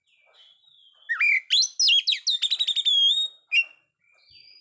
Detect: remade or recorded recorded